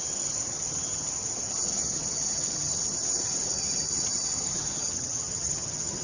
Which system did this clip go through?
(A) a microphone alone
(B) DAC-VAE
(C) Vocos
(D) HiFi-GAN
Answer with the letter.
D